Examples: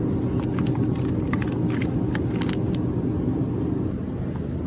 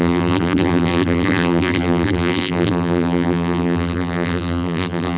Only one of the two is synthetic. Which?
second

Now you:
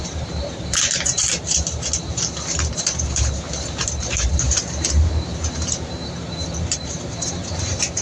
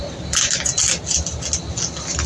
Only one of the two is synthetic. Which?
first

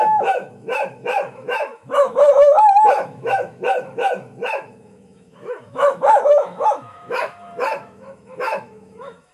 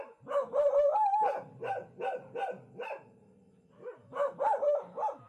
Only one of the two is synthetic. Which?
first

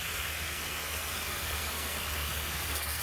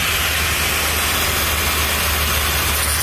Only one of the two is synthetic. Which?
first